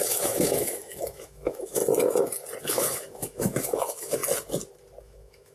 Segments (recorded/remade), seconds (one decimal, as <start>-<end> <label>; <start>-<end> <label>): 0.0-1.8 remade; 1.8-2.6 recorded; 2.6-4.2 remade; 4.2-5.0 recorded; 5.0-5.5 remade